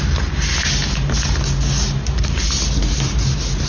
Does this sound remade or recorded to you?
recorded